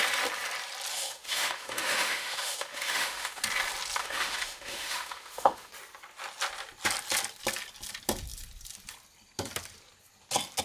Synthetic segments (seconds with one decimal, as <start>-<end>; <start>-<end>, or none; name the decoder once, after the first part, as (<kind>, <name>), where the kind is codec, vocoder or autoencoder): 0.9-3.4 (autoencoder, DAC-VAE); 4.0-5.7